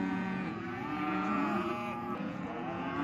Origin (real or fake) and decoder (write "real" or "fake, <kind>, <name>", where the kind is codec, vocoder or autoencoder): fake, vocoder, Vocos